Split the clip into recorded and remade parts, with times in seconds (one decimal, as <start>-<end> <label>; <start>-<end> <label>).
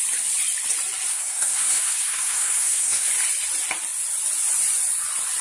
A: 0.0-1.1 recorded; 1.1-3.1 remade; 3.1-5.4 recorded